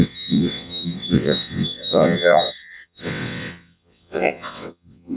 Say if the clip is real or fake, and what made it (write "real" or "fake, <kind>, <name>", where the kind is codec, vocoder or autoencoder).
fake, vocoder, WaveNeXt